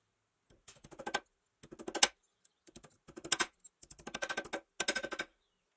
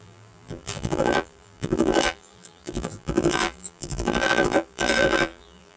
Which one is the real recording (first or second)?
first